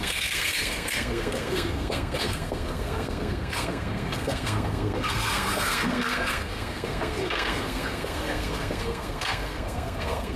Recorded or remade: remade